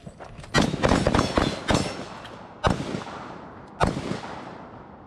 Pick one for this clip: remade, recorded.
recorded